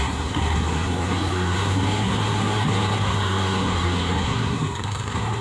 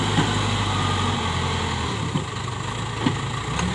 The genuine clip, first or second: second